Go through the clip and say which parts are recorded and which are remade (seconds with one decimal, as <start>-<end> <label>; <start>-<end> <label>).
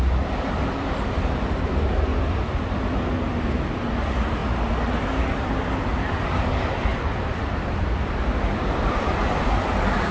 0.0-4.4 remade; 4.4-5.2 recorded; 5.2-6.9 remade; 6.9-7.5 recorded; 7.5-10.1 remade